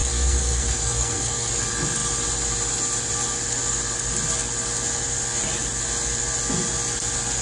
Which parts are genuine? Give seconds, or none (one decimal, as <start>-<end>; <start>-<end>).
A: 1.5-7.4